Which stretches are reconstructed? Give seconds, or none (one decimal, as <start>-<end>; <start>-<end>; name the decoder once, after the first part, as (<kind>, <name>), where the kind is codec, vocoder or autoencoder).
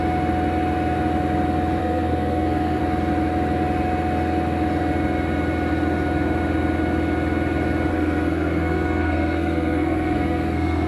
1.8-2.8 (codec, SNAC); 7.9-10.9